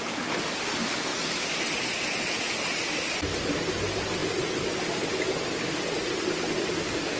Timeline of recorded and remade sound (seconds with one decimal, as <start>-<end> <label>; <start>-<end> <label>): 0.0-7.2 recorded